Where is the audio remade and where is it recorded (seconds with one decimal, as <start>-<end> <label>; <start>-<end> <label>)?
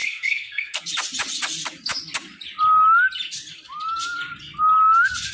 0.0-0.8 remade; 0.8-5.3 recorded